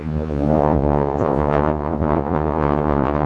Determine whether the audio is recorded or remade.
remade